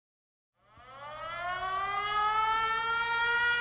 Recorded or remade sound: recorded